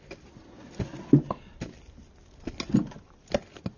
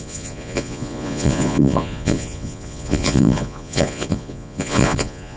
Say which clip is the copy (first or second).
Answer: second